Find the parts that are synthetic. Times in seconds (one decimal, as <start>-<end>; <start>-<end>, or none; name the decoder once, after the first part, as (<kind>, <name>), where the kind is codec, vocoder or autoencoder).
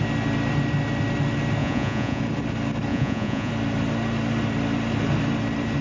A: 1.6-2.2 (vocoder, Vocos); 2.9-3.5